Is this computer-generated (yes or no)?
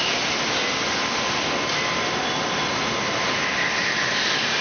no